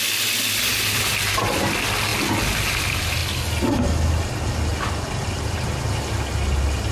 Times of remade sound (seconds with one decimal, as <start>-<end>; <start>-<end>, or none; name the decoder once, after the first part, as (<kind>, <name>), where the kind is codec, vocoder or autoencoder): 3.2-4.2 (vocoder, BigVGAN v2); 4.7-5.7